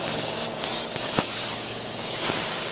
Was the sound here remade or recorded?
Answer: remade